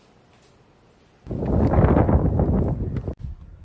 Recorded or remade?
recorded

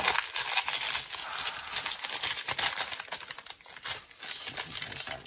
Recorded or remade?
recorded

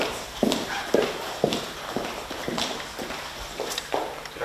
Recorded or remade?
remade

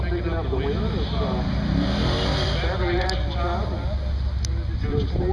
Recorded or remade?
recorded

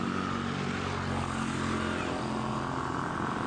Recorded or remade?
recorded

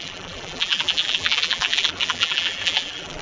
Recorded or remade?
remade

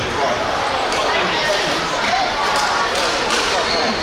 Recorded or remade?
remade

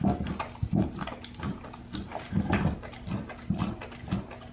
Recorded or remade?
recorded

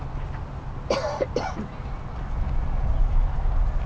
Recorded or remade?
recorded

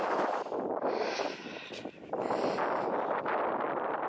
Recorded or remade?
recorded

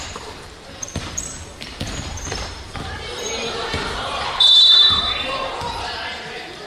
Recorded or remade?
remade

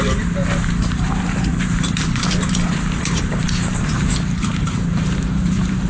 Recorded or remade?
remade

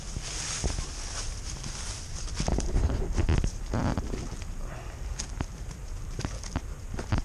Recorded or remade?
recorded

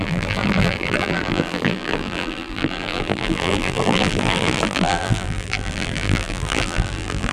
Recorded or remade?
remade